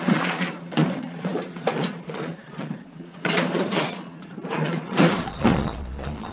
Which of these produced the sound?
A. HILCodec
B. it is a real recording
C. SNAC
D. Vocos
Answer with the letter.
D